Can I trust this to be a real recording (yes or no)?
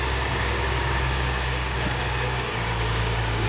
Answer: no